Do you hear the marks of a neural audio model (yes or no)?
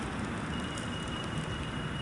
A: no